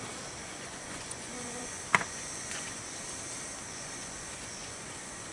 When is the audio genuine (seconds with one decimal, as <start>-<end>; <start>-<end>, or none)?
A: 0.0-0.4; 2.8-3.6